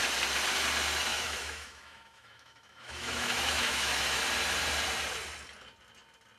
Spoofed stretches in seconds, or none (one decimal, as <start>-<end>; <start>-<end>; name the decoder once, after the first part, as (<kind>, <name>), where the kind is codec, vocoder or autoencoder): 1.1-4.2 (autoencoder, DAC-VAE)